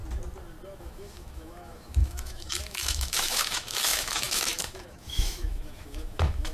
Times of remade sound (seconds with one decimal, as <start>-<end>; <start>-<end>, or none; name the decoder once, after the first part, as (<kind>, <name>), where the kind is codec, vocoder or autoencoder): 0.8-6.5 (autoencoder, DAC-VAE)